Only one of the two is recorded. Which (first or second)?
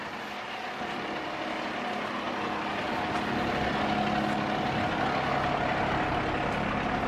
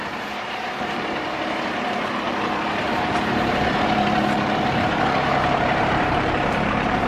first